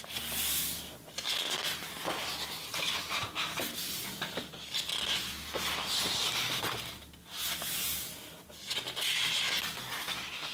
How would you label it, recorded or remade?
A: recorded